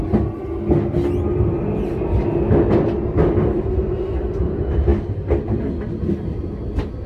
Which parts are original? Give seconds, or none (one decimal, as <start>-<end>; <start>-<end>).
0.0-7.1